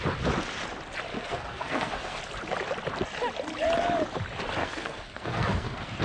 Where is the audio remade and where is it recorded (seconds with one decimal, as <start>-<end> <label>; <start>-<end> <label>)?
0.0-1.1 recorded; 1.1-2.2 remade; 2.2-4.6 recorded; 4.6-6.0 remade